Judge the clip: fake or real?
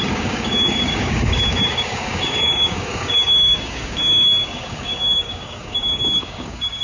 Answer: fake